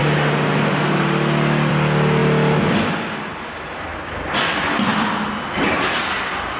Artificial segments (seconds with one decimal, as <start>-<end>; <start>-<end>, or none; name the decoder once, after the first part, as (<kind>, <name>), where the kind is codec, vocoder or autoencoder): none